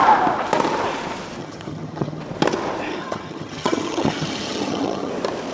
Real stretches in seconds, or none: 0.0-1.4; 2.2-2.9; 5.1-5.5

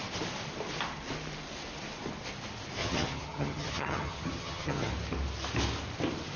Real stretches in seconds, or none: 0.0-2.8; 4.9-6.4

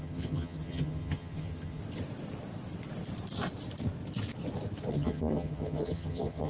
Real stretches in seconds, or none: 1.8-4.9

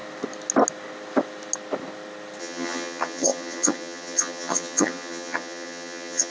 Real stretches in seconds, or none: 0.0-2.4